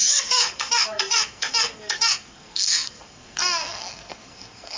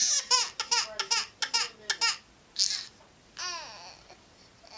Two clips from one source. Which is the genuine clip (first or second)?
second